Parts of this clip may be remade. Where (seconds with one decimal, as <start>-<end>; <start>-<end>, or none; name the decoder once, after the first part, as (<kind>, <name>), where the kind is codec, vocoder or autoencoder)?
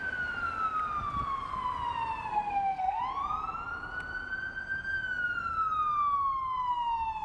2.3-3.0 (codec, SNAC)